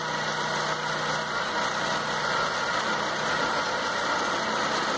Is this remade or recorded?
recorded